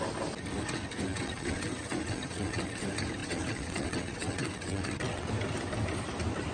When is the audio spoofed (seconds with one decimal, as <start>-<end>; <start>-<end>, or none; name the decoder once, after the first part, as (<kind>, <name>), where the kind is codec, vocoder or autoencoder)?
1.1-2.8 (vocoder, WaveNeXt); 3.2-5.3